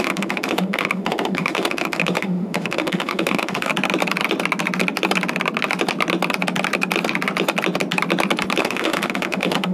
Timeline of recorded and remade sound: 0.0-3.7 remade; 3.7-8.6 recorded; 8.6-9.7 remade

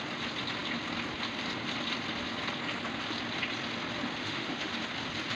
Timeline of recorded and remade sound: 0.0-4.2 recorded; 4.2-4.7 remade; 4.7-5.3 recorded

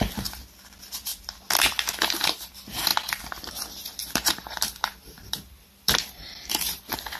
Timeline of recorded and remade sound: 0.0-4.0 recorded; 4.0-6.8 remade; 6.8-7.2 recorded

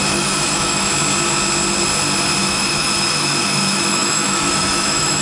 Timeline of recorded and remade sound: 0.0-0.9 remade; 0.9-2.4 recorded; 2.4-5.2 remade

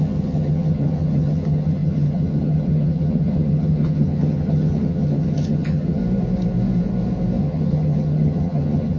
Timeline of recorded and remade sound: 0.0-6.0 remade; 6.0-7.4 recorded; 7.4-9.0 remade

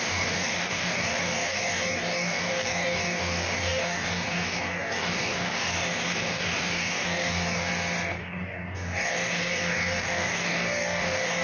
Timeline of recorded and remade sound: 0.0-7.7 remade; 7.7-8.2 recorded; 8.2-11.4 remade

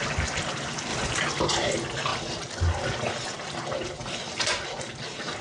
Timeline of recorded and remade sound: 0.0-5.4 recorded

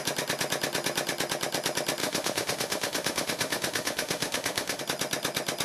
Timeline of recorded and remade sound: 0.0-2.0 recorded; 2.0-4.8 remade; 4.8-5.6 recorded